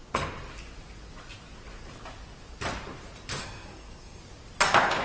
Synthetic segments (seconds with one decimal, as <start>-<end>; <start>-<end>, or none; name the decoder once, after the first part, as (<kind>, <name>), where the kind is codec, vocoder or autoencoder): 3.4-4.2 (codec, SNAC)